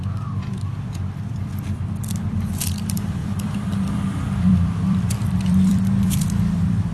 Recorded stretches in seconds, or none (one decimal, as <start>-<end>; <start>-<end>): 1.5-2.3